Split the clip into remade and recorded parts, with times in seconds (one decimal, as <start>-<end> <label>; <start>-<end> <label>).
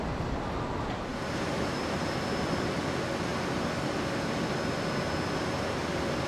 0.0-1.1 recorded; 1.1-2.8 remade; 2.8-6.3 recorded